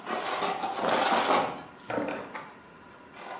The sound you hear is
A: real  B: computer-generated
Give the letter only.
A